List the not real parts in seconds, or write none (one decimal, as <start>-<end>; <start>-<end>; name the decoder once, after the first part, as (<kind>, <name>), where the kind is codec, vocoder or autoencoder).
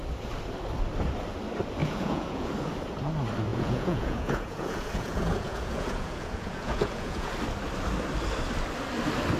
1.8-2.5 (vocoder, Vocos); 3.5-7.3